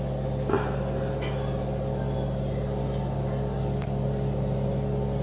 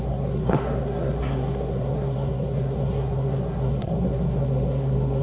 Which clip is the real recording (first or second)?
first